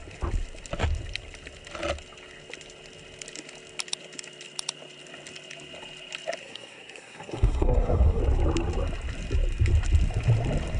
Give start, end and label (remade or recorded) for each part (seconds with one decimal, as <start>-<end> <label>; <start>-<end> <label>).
0.0-6.4 recorded; 6.4-8.2 remade; 8.2-10.8 recorded